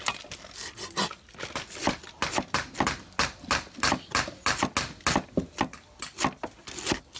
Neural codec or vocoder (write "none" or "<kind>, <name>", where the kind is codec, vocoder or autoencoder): none